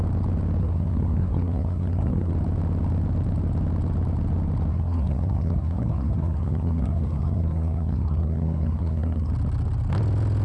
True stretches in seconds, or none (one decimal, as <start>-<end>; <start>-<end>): 0.0-0.6; 2.3-4.7; 9.3-10.4